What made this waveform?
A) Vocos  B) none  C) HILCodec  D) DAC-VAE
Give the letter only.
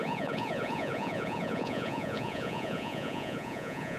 A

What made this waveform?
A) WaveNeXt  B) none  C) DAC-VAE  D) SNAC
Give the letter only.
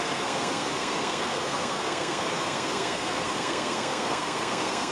D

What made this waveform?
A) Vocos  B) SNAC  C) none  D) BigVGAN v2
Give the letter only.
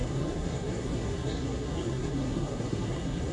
B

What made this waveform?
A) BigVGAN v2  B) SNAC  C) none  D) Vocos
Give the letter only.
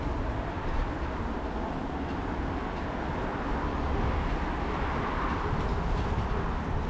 C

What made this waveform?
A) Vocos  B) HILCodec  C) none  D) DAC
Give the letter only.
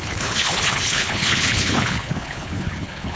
B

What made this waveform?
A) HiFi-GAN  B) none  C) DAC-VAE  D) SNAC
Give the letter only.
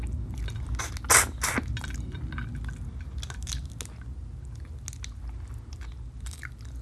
B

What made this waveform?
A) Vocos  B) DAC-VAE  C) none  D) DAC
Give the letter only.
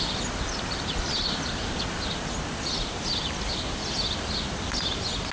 C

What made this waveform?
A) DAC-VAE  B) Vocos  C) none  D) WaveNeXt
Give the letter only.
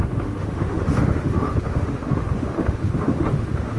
A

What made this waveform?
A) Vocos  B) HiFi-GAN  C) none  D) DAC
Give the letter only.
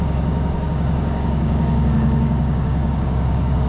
D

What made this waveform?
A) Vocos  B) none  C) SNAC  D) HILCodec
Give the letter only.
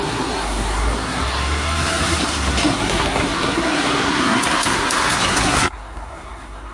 C